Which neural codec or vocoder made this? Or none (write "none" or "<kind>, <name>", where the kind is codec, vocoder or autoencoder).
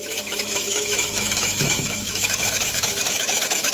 autoencoder, DAC-VAE